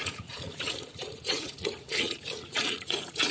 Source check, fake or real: fake